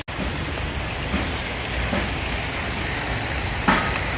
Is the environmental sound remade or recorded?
recorded